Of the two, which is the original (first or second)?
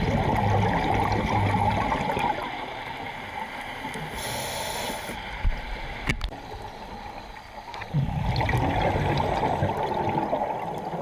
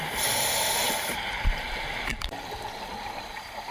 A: first